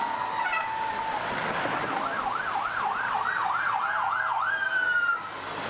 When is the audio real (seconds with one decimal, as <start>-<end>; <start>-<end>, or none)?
0.0-0.5; 3.8-5.7